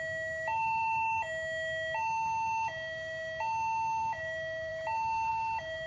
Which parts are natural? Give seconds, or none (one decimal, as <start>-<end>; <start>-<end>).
0.0-5.9